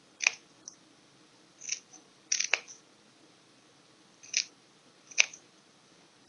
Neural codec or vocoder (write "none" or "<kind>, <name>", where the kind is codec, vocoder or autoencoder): none